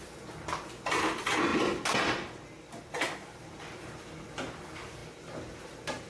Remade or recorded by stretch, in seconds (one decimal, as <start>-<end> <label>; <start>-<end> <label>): 0.0-6.1 recorded